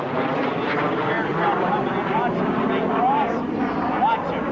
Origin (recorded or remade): recorded